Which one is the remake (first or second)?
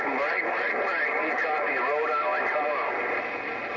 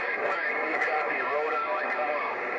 second